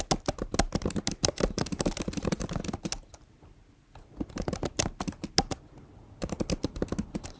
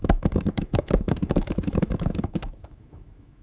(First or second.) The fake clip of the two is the second